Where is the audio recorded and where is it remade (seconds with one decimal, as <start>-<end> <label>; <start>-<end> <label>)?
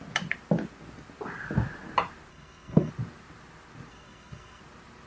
0.0-2.3 recorded; 2.3-2.9 remade; 2.9-3.9 recorded; 3.9-4.6 remade; 4.6-5.1 recorded